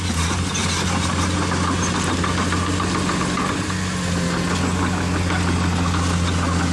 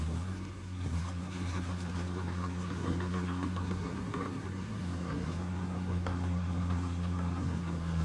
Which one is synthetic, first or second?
second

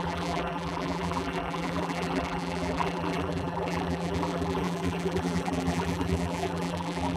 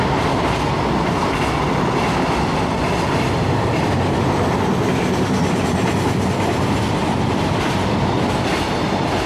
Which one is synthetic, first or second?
first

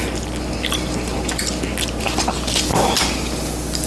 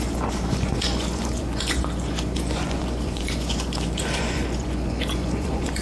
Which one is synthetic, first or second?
second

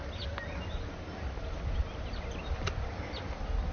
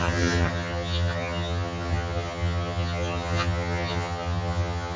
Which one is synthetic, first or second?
second